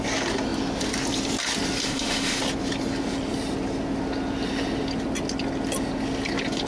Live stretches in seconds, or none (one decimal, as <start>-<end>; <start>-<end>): 0.0-1.8; 2.4-6.7